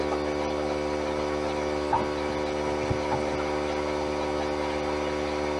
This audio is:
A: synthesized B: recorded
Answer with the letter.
B